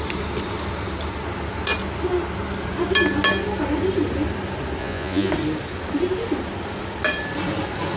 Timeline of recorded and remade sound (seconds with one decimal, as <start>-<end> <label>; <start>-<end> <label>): 0.0-4.8 recorded; 4.8-5.3 remade; 5.3-8.0 recorded